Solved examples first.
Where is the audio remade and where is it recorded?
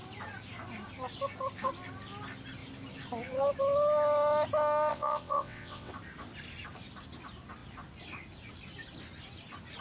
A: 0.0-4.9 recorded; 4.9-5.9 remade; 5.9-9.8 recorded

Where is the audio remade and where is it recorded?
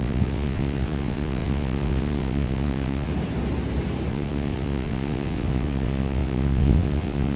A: 0.0-3.1 remade; 3.1-4.1 recorded; 4.1-7.4 remade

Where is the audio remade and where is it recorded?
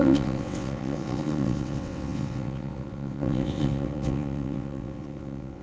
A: 0.0-5.6 remade